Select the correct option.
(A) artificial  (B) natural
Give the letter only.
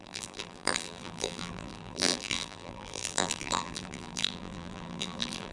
A